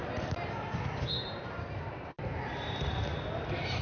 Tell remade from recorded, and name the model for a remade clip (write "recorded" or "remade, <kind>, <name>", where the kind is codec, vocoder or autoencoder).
recorded